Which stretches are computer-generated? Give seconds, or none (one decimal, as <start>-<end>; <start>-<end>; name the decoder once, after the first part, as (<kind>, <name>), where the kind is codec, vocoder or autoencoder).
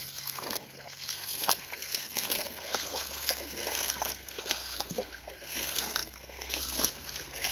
0.0-7.5 (codec, SNAC)